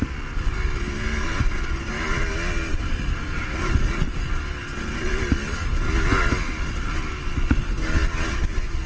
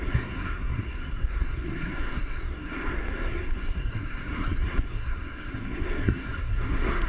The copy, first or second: second